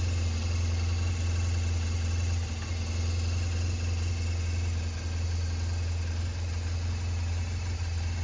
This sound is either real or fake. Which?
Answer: real